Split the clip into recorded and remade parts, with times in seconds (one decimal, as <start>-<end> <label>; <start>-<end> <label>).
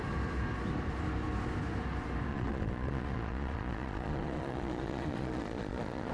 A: 0.0-2.3 recorded; 2.3-6.1 remade